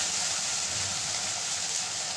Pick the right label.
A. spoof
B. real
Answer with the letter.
B